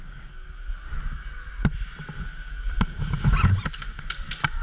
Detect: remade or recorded recorded